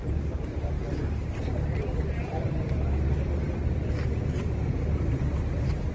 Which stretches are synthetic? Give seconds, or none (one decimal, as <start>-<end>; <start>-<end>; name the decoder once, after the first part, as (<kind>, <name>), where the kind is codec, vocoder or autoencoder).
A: none